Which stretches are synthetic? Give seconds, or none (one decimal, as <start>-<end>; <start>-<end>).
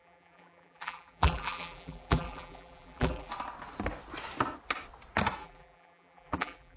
0.0-3.3; 5.4-6.8